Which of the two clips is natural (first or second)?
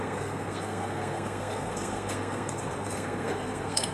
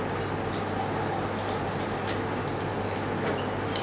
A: second